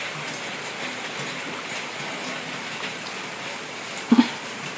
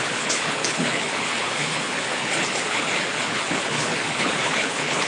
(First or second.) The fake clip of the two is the second